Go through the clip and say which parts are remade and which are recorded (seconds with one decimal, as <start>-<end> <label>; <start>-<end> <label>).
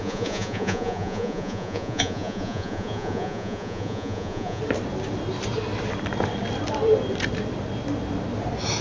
0.0-4.6 remade; 4.6-8.8 recorded